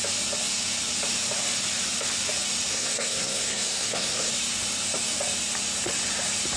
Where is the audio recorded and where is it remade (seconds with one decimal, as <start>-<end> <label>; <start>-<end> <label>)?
0.0-2.7 recorded; 2.7-4.3 remade; 4.3-6.6 recorded

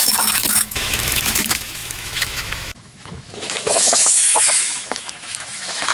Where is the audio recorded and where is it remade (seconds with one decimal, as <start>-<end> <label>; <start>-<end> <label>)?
0.0-5.9 remade

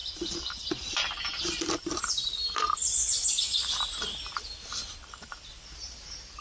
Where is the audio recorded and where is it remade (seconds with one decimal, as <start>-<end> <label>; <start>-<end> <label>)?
0.0-3.7 remade; 3.7-4.7 recorded; 4.7-5.5 remade; 5.5-6.4 recorded

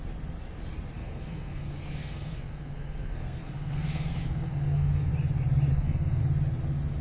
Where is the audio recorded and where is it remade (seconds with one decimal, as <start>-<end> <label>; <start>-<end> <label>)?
0.0-1.0 recorded; 1.0-5.1 remade; 5.1-5.7 recorded; 5.7-6.2 remade; 6.2-7.0 recorded

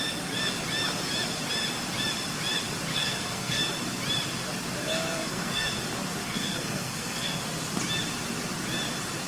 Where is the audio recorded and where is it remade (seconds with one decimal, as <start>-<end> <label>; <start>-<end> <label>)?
0.0-2.9 recorded; 2.9-3.6 remade; 3.6-4.8 recorded; 4.8-5.8 remade; 5.8-6.2 recorded; 6.2-7.4 remade; 7.4-9.3 recorded